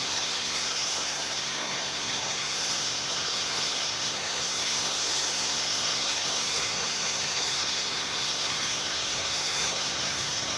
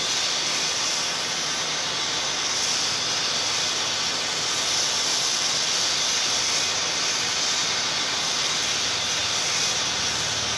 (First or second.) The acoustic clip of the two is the second